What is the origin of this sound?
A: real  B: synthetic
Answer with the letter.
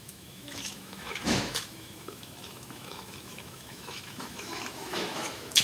B